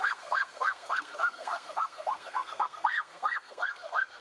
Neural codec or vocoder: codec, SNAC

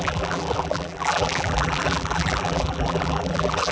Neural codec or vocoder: vocoder, BigVGAN v2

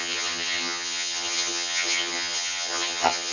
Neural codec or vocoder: vocoder, HiFi-GAN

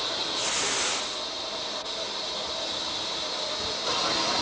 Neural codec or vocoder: none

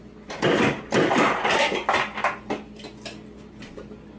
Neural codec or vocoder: none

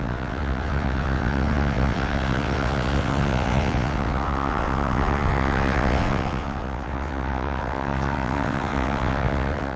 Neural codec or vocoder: vocoder, WaveNeXt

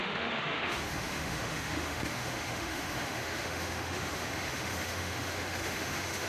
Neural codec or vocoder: autoencoder, DAC-VAE